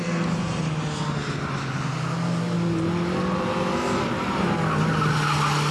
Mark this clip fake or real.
real